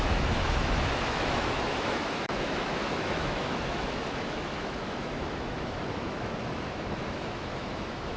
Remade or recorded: remade